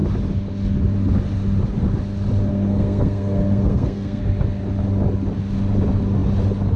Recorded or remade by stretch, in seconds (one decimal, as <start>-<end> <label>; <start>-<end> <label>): 0.0-2.5 recorded; 2.5-4.2 remade; 4.2-6.8 recorded